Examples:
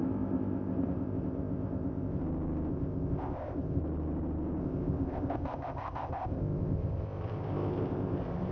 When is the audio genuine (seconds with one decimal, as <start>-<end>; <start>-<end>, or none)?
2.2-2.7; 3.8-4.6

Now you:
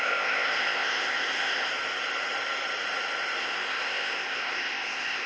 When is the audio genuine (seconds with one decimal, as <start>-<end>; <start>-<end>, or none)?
1.7-3.4

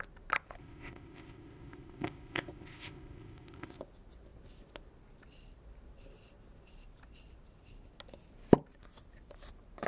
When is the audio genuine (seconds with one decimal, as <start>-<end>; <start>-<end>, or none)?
0.0-0.6; 3.8-9.9